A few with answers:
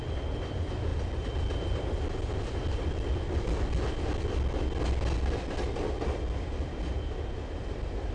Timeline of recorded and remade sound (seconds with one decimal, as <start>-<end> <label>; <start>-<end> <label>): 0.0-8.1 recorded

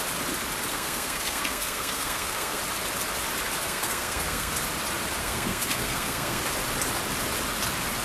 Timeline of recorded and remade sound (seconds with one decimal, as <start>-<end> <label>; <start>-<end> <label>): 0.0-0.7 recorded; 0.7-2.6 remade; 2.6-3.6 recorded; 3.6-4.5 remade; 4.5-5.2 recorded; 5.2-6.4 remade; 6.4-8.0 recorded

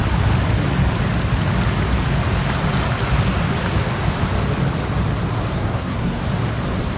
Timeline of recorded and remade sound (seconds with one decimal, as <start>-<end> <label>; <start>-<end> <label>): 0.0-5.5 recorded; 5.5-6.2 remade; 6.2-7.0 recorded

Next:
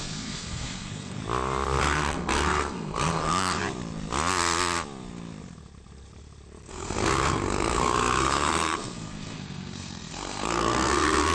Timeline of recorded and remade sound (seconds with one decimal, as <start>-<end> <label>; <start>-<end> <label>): 0.0-1.2 remade; 1.2-1.8 recorded; 1.8-3.6 remade; 3.6-6.7 recorded; 6.7-11.3 remade